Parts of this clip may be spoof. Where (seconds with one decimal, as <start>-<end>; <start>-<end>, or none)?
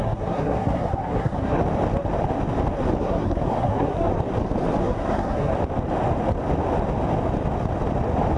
0.0-1.6; 3.0-4.1; 4.8-5.5